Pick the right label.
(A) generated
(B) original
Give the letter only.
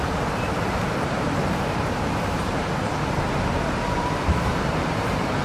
A